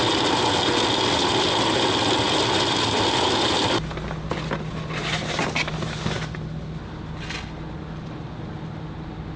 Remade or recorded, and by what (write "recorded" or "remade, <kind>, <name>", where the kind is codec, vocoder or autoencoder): recorded